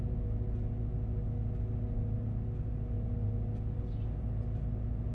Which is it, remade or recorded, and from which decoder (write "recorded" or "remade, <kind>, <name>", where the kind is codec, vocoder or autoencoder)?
recorded